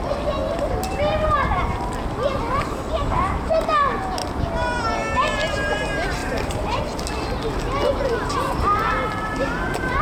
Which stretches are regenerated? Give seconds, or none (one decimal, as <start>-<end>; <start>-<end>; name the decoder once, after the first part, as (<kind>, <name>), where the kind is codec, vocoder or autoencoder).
0.4-1.9 (vocoder, BigVGAN v2); 2.5-3.7; 6.2-6.8